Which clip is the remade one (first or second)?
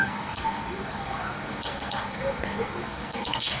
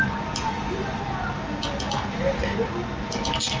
first